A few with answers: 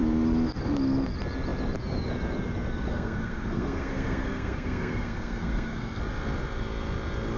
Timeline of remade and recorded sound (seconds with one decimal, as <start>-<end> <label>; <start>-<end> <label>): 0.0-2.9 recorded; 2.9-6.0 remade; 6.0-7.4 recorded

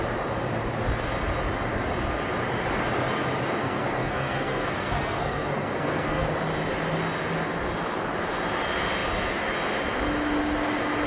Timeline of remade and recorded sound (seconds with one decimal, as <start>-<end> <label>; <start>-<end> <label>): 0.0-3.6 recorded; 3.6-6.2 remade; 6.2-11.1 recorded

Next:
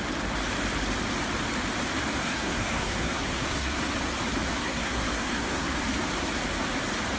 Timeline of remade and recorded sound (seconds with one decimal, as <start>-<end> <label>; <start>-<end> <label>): 0.0-2.2 recorded; 2.2-3.9 remade; 3.9-4.6 recorded; 4.6-5.8 remade; 5.8-7.2 recorded

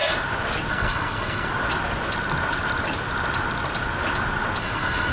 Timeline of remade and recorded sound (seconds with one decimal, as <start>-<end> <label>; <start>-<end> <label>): 0.0-0.7 recorded; 0.7-1.5 remade; 1.5-4.6 recorded; 4.6-5.1 remade

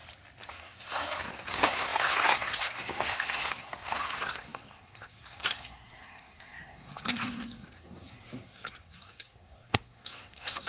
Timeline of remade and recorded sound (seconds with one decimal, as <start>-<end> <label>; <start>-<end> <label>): 0.0-0.5 recorded; 0.5-10.7 remade

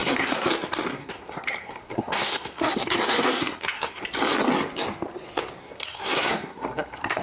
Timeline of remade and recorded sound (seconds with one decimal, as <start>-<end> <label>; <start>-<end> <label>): 0.0-0.5 remade; 0.5-0.9 recorded; 0.9-4.0 remade; 4.0-5.6 recorded; 5.6-7.2 remade